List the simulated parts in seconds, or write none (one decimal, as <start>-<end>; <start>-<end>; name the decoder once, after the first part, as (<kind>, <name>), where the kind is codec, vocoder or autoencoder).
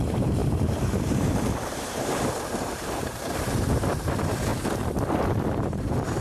0.0-4.5 (vocoder, BigVGAN v2); 5.2-6.2